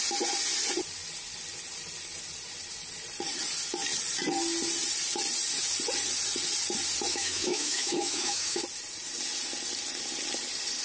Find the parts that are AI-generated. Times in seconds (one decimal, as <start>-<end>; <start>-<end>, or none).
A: 7.1-8.6